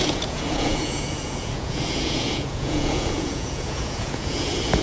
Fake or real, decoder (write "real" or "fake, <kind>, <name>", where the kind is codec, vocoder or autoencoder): fake, vocoder, Vocos